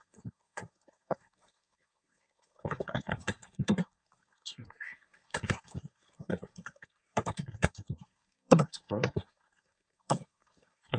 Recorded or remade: remade